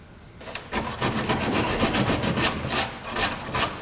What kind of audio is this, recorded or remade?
recorded